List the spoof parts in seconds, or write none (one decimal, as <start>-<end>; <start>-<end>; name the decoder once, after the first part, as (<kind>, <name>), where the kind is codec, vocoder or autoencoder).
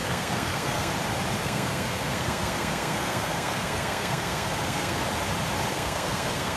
0.0-0.9 (codec, SNAC); 1.4-5.0; 5.7-6.6